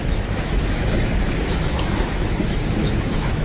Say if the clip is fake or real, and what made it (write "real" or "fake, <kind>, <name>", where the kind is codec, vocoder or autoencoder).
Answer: fake, autoencoder, DAC-VAE